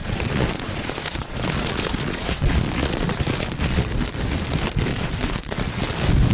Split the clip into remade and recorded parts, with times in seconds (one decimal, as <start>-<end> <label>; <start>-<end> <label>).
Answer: 0.0-3.8 remade; 3.8-4.9 recorded; 4.9-5.8 remade; 5.8-6.3 recorded